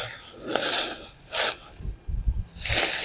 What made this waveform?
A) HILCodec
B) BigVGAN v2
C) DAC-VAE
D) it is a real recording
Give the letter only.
D